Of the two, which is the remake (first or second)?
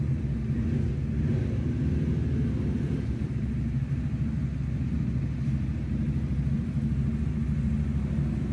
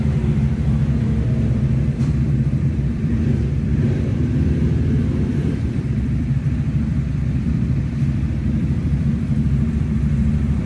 second